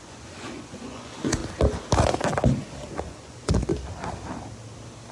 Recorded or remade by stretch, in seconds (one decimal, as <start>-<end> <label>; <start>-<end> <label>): 0.0-1.4 remade; 1.4-3.1 recorded; 3.1-3.7 remade; 3.7-5.1 recorded